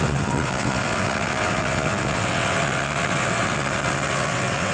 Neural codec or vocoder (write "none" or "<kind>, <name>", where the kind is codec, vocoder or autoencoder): vocoder, WaveNeXt